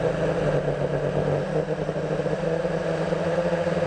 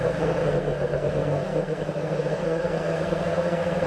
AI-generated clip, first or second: second